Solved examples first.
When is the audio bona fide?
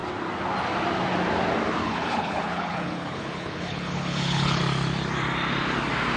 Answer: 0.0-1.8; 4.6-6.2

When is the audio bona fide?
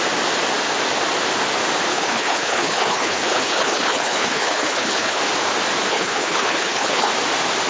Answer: 0.0-1.9; 5.2-5.9; 7.1-7.7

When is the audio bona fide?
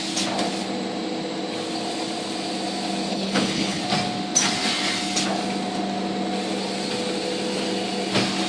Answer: 0.0-3.1; 3.8-8.5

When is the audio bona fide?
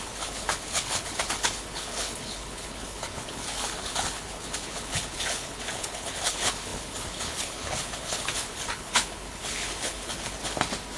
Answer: 10.4-11.0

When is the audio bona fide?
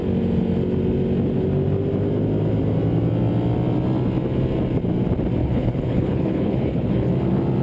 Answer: 0.0-5.4; 7.1-7.6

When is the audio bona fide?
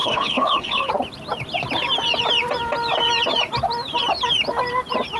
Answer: 0.9-5.2